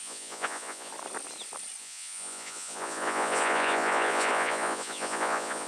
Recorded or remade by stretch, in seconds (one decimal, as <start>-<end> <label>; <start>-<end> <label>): 0.0-0.9 remade; 0.9-1.8 recorded; 1.8-5.7 remade

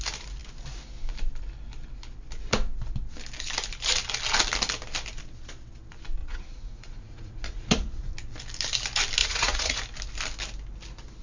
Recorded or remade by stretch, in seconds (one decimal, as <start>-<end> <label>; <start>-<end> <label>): 0.0-6.2 recorded; 6.2-8.1 remade; 8.1-9.2 recorded; 9.2-9.8 remade; 9.8-11.2 recorded

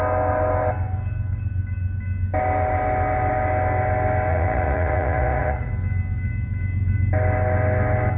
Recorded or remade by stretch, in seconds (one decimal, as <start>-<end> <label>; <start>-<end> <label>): 0.0-4.3 recorded; 4.3-5.7 remade; 5.7-8.2 recorded

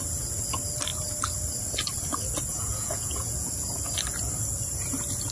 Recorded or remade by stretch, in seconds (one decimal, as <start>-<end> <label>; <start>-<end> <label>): 0.0-2.5 recorded; 2.5-3.5 remade; 3.5-5.3 recorded

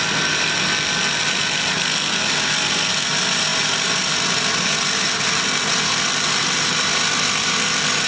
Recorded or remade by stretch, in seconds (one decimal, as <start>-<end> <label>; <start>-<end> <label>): 0.0-8.1 recorded

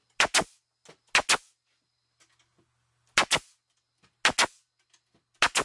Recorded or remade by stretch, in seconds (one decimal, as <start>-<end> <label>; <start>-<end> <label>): 0.0-5.6 recorded

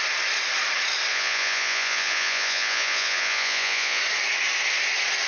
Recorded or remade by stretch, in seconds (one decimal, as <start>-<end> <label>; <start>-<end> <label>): 0.0-1.1 recorded; 1.1-4.0 remade; 4.0-5.3 recorded

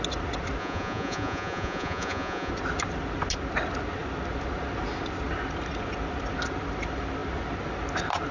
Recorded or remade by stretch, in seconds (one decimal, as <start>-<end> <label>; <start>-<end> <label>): 0.0-0.6 recorded; 0.6-2.5 remade; 2.5-8.3 recorded